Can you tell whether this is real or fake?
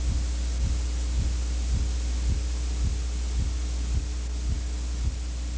real